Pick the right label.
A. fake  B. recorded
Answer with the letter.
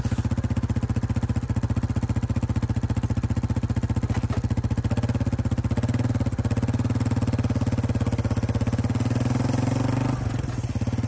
B